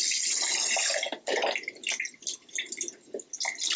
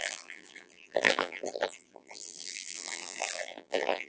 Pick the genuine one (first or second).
first